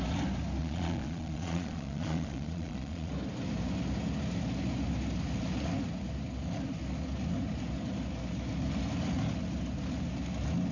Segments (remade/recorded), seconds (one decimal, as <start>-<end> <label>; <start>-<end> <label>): 0.0-0.6 recorded; 0.6-3.1 remade; 3.1-10.7 recorded